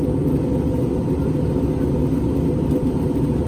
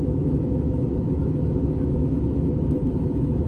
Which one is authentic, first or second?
first